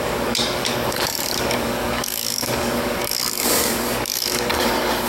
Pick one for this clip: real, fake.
fake